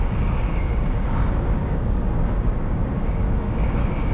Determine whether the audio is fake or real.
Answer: fake